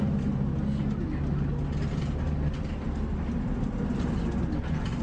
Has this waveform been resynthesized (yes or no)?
no